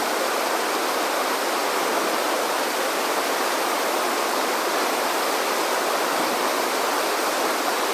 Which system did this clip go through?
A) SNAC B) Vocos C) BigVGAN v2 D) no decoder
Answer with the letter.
D